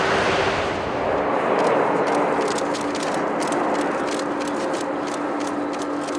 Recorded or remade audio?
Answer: recorded